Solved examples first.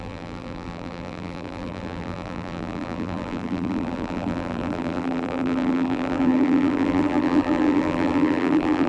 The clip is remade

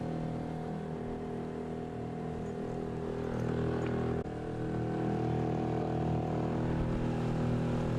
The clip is recorded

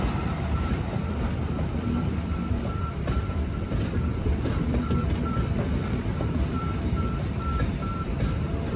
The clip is remade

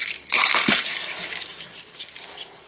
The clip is recorded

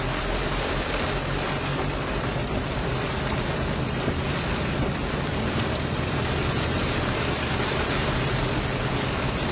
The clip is remade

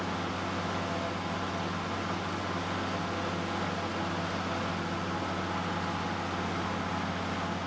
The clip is recorded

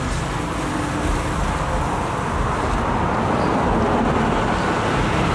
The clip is recorded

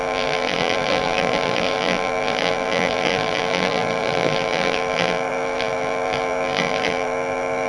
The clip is remade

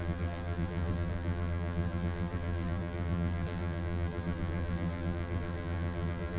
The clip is remade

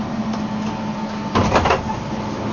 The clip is recorded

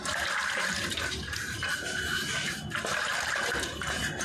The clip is remade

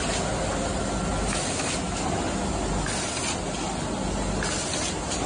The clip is recorded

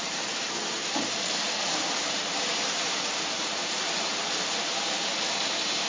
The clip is remade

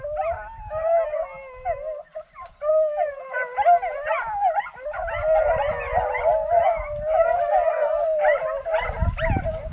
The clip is recorded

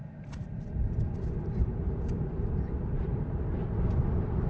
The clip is remade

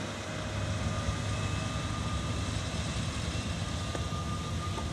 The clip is recorded